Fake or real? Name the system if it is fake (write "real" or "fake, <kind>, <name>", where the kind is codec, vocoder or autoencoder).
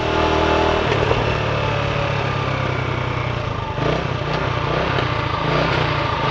real